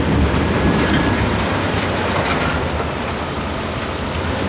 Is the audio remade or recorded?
recorded